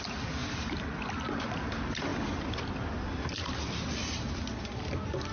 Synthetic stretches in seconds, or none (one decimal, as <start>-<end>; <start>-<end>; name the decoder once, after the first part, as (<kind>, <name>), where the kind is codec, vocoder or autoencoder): 0.4-1.1 (vocoder, BigVGAN v2)